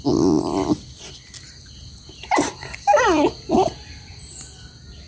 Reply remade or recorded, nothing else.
recorded